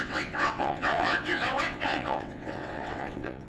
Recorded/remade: remade